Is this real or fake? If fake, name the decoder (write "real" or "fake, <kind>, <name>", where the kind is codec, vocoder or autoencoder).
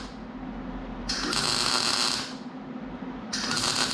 real